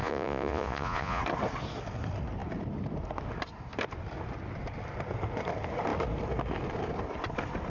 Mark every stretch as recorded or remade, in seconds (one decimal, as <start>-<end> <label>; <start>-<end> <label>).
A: 0.0-1.2 remade; 1.2-7.7 recorded